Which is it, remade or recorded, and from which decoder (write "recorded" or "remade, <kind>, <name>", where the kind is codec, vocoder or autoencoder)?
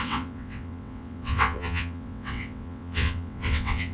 remade, vocoder, WaveNeXt